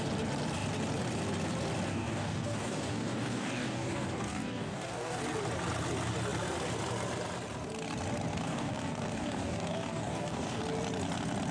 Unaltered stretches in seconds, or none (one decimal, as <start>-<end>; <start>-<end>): 0.0-1.9; 5.2-8.3; 10.6-11.5